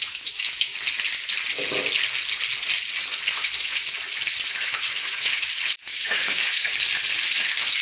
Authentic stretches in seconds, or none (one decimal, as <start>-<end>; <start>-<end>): 0.7-3.3; 3.8-4.5; 6.7-7.2